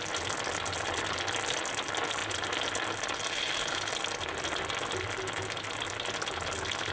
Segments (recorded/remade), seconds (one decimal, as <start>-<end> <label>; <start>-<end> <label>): 0.0-6.9 recorded